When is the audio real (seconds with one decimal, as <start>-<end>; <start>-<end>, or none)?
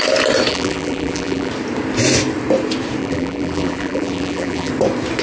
0.0-0.5; 1.5-3.0; 4.7-5.2